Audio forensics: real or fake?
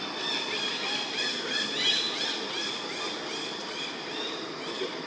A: real